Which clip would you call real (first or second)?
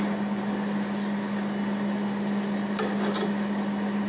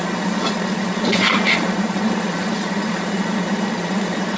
first